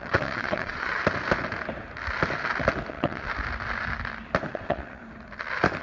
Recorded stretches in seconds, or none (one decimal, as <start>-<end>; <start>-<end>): 1.0-2.9; 3.3-4.5; 5.0-5.8